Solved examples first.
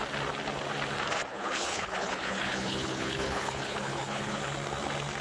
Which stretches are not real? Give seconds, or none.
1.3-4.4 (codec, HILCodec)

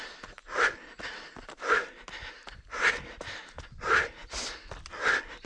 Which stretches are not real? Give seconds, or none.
none

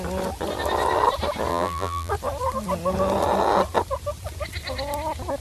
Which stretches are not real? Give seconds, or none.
1.5-2.1 (vocoder, BigVGAN v2)

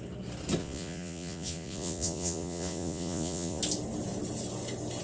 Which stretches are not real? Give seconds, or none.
0.6-3.6 (vocoder, Vocos)

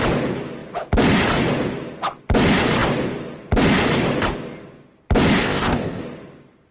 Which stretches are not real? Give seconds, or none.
5.4-6.0 (codec, ZipCodec)

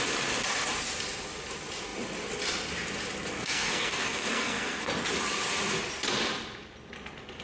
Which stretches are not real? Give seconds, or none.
3.4-4.9 (codec, SNAC)

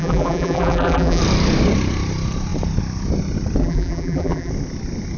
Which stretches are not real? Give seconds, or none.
0.0-1.2 (vocoder, BigVGAN v2); 3.6-4.5